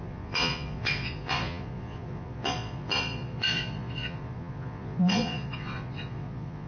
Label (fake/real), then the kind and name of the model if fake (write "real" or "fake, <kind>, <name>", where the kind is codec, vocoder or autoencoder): fake, vocoder, Vocos